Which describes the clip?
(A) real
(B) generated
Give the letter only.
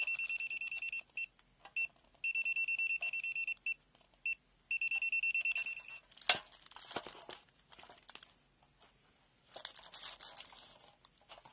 A